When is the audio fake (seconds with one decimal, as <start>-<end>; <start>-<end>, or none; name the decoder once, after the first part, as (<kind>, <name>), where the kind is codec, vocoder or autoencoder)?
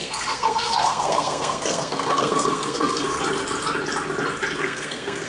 0.0-3.2 (codec, SNAC); 4.6-5.3